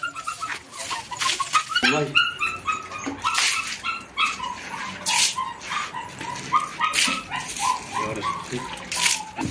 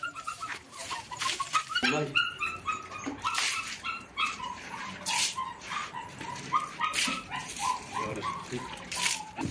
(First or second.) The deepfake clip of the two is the second